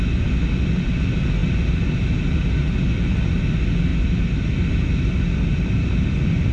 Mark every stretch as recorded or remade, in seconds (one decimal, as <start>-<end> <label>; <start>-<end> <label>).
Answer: 0.0-6.5 recorded